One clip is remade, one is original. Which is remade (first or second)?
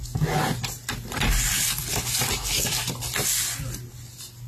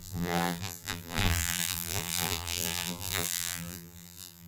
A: second